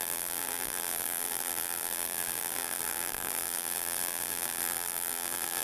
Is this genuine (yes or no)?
no